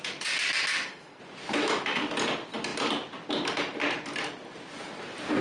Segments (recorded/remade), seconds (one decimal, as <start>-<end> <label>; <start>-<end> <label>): 0.0-0.7 recorded; 0.7-1.2 remade; 1.2-5.4 recorded